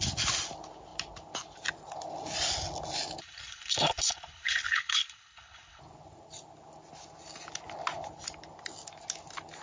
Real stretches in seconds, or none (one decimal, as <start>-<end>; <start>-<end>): 0.0-3.2; 5.8-9.6

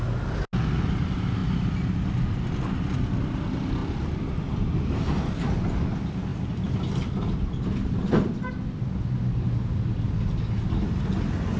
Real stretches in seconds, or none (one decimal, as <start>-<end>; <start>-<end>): 0.0-3.8; 4.4-6.3; 8.5-11.6

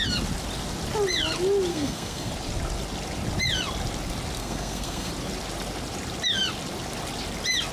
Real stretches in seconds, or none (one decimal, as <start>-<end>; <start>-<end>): 0.0-1.7; 2.3-4.4; 5.1-7.7

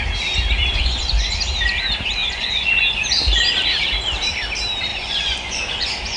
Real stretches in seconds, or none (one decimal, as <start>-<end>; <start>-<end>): 0.0-0.7; 1.3-2.2; 2.8-4.9